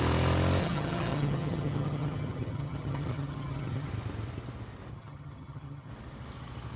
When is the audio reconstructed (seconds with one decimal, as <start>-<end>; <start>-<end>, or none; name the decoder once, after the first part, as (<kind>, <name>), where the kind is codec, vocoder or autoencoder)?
0.6-3.9 (vocoder, HiFi-GAN); 4.9-5.9